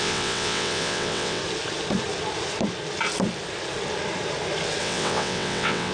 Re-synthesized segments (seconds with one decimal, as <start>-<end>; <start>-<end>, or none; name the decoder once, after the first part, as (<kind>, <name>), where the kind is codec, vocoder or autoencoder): 0.0-1.4 (vocoder, WaveNeXt); 4.8-5.9